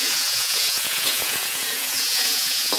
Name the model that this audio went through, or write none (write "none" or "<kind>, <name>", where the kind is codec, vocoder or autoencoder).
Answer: vocoder, Vocos